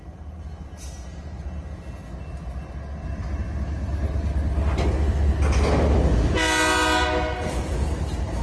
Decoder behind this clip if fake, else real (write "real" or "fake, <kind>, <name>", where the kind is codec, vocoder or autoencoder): real